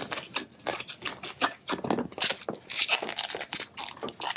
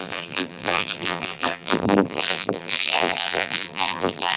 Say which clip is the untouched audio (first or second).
first